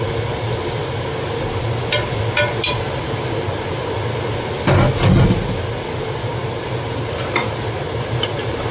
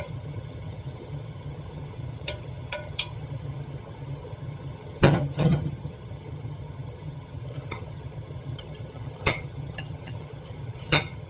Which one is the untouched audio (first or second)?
first